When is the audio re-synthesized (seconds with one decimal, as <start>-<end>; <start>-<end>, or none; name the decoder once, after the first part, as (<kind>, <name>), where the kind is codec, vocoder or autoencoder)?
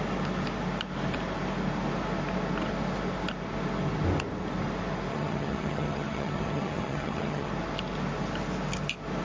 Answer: 5.1-7.5 (vocoder, HiFi-GAN)